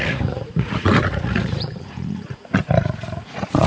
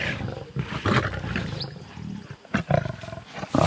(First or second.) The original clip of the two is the second